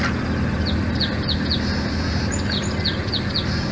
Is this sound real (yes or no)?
yes